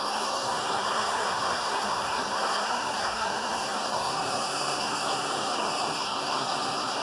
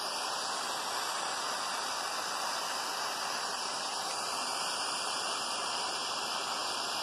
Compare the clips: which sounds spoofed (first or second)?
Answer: first